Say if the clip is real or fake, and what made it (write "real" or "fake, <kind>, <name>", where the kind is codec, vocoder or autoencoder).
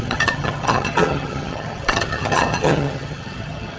fake, vocoder, HiFi-GAN